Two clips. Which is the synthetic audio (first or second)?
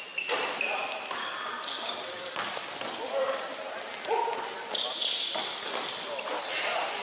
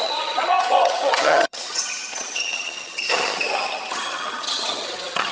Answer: second